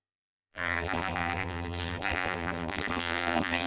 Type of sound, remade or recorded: remade